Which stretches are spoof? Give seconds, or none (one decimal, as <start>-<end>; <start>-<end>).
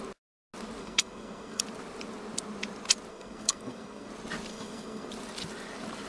0.8-1.6; 3.1-4.1; 4.5-5.1